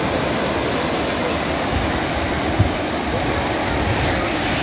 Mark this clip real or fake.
real